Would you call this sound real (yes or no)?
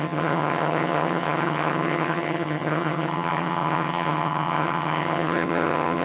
no